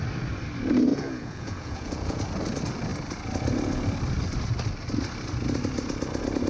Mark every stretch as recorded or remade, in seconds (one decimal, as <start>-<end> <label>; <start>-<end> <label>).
0.0-0.9 recorded; 0.9-2.2 remade; 2.2-6.5 recorded